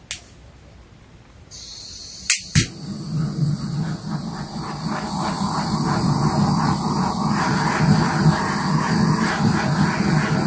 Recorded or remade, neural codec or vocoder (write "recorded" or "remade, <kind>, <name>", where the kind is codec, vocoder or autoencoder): recorded